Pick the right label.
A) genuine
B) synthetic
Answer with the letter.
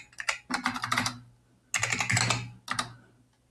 A